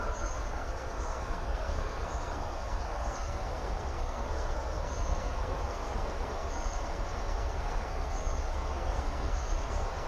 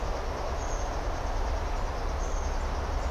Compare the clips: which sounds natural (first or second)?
second